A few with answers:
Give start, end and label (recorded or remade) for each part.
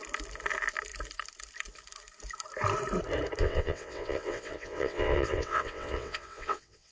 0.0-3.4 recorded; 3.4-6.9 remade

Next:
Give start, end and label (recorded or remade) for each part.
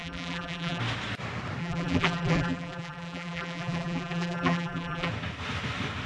0.0-0.8 remade; 0.8-1.6 recorded; 1.6-5.1 remade; 5.1-6.1 recorded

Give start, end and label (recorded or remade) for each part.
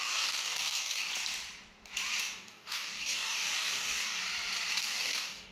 0.0-1.1 remade; 1.1-2.2 recorded; 2.2-4.2 remade; 4.2-4.8 recorded; 4.8-5.5 remade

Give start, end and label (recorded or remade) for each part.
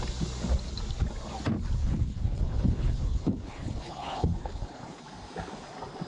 0.0-1.8 recorded; 1.8-5.0 remade; 5.0-6.1 recorded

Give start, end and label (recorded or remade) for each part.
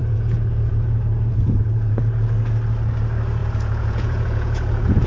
0.0-2.0 remade; 2.0-3.4 recorded; 3.4-5.1 remade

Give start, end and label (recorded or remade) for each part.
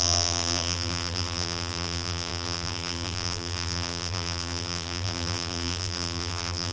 0.0-6.7 remade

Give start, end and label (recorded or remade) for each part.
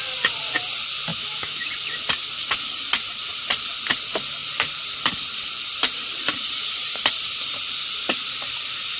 0.0-1.1 recorded; 1.1-1.7 remade; 1.7-9.0 recorded